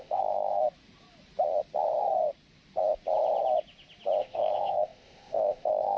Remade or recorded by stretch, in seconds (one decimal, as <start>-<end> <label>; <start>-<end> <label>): 0.0-0.6 remade; 0.6-4.2 recorded; 4.2-6.0 remade